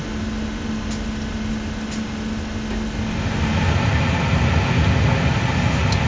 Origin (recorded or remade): recorded